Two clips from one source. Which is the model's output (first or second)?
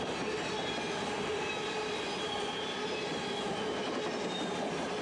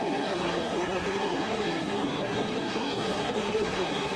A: second